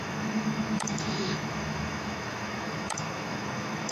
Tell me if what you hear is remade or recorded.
remade